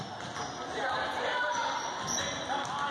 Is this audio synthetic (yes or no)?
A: no